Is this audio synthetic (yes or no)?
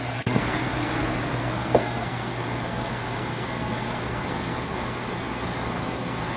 yes